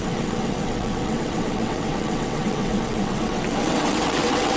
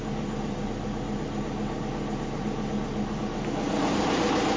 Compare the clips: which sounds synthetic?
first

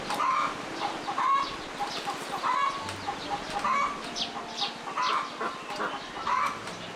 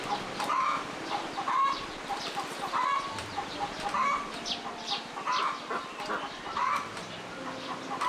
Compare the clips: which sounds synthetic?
second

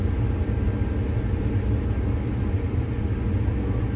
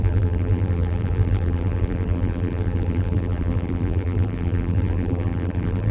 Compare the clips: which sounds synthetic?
second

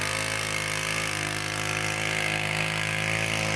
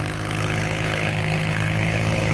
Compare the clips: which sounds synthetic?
second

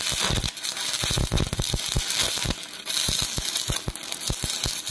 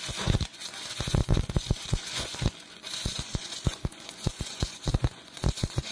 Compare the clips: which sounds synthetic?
second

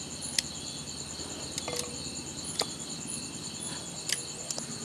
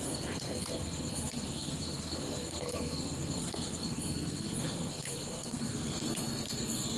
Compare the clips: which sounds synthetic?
second